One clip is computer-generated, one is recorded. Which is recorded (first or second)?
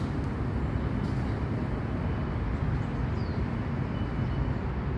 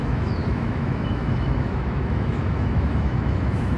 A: first